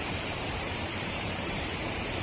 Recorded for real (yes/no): no